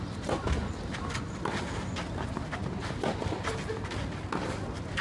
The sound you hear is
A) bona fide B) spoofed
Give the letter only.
A